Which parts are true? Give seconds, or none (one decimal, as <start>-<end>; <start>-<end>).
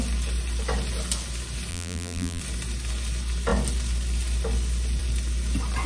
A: 0.0-1.7; 2.4-5.9